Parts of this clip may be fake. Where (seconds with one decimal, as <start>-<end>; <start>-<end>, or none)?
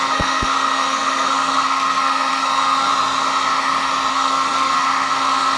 0.0-2.9; 4.1-5.6